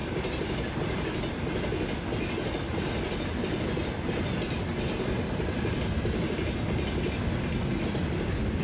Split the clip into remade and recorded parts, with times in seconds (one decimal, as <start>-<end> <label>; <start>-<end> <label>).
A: 0.0-8.6 recorded